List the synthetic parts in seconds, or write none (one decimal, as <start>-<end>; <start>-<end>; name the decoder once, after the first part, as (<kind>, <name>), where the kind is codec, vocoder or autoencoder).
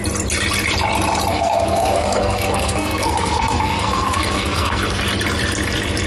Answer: 1.3-5.0 (codec, SNAC)